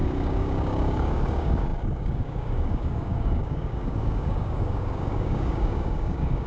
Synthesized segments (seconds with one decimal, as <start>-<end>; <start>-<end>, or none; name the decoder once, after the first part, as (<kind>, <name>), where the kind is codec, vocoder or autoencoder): 0.0-6.5 (codec, DAC)